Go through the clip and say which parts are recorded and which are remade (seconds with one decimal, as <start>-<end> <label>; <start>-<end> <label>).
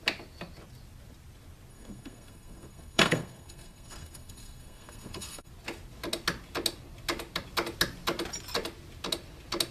0.0-1.7 recorded; 1.7-5.5 remade; 5.5-9.7 recorded